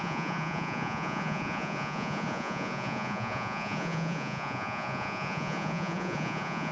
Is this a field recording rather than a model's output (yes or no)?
no